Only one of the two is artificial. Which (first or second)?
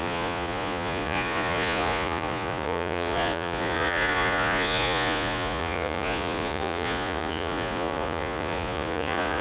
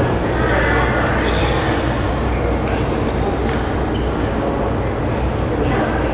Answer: first